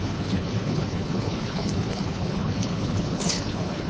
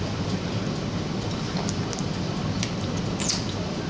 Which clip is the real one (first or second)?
second